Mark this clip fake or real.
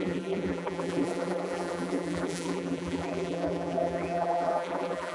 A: fake